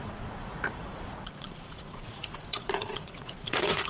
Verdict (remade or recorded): remade